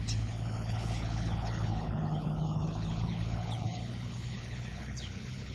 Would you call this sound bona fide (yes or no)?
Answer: no